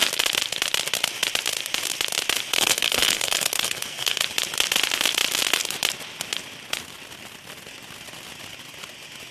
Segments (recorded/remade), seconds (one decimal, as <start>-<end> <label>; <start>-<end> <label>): 0.0-2.5 recorded; 2.5-4.2 remade; 4.2-9.3 recorded